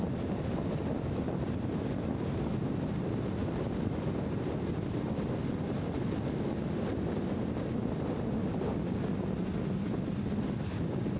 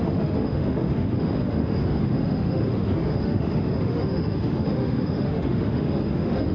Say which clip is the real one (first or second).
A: first